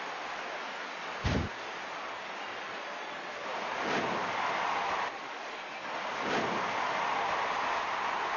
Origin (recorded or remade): recorded